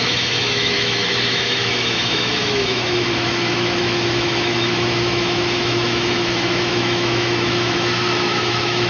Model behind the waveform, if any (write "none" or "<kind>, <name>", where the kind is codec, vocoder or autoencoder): autoencoder, DAC-VAE